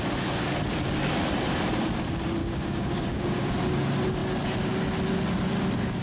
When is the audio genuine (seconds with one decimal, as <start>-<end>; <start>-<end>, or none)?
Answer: 0.0-2.4; 3.5-6.0